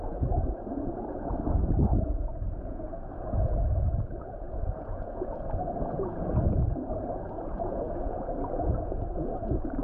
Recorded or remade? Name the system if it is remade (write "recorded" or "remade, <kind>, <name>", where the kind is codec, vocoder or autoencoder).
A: remade, vocoder, Vocos